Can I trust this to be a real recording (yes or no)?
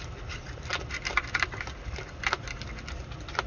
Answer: yes